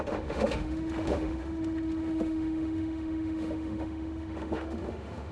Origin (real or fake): fake